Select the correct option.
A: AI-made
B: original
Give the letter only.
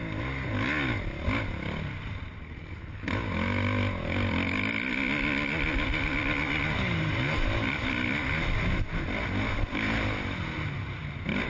B